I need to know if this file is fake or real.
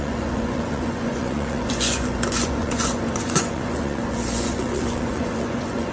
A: fake